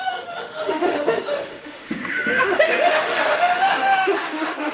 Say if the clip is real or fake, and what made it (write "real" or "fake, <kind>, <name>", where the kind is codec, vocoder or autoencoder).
fake, autoencoder, DAC-VAE